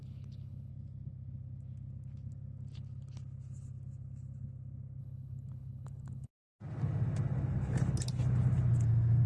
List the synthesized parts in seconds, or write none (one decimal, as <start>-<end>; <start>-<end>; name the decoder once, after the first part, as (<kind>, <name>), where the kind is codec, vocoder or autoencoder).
0.0-0.7 (codec, HILCodec); 5.0-6.3